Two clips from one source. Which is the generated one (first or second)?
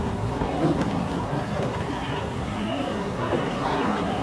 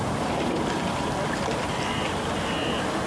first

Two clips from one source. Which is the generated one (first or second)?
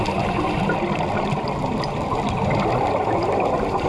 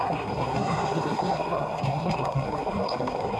second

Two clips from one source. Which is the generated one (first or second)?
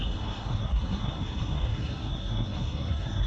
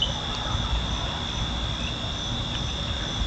first